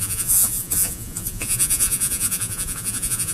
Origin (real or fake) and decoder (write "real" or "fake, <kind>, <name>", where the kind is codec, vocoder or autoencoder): fake, vocoder, Vocos